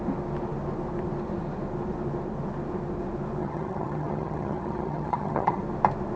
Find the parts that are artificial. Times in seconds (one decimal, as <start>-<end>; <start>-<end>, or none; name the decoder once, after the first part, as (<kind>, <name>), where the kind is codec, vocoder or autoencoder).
3.4-5.6 (vocoder, HiFi-GAN)